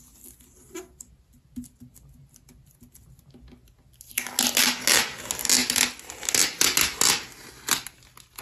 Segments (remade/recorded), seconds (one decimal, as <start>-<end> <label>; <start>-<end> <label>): 0.0-8.4 recorded